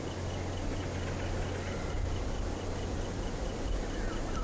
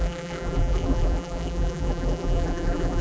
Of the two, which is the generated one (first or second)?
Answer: second